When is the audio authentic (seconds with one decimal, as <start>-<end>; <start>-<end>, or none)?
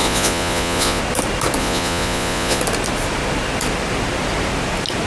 1.0-1.6; 2.6-5.1